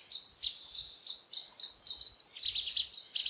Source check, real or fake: real